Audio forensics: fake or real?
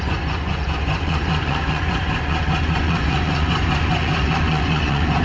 fake